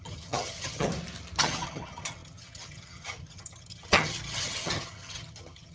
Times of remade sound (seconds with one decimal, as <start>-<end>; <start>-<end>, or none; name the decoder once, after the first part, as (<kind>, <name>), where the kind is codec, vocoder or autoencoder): 0.0-0.9 (vocoder, HiFi-GAN); 1.4-5.7